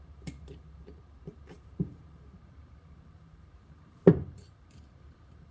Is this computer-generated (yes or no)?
yes